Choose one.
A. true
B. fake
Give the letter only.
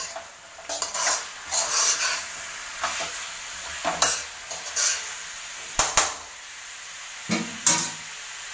A